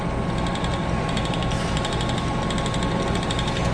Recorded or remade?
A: recorded